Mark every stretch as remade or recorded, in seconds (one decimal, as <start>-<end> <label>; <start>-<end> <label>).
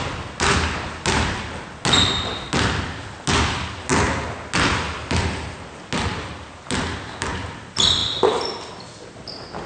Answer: 0.0-9.7 recorded